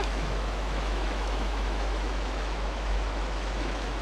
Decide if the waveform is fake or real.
fake